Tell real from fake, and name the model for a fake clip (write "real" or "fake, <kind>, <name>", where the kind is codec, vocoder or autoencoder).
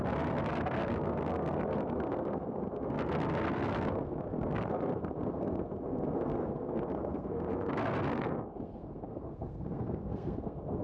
fake, codec, SNAC